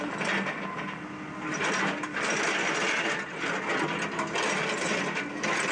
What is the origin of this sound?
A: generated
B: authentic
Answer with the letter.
B